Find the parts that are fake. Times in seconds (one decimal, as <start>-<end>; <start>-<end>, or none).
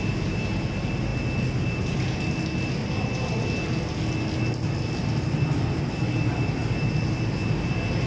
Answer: none